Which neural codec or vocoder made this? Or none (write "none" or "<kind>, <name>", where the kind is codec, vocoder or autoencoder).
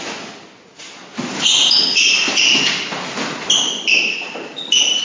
none